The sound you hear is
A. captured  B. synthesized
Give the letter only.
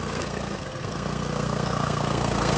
B